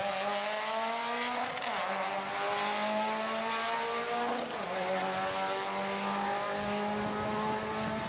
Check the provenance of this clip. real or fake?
real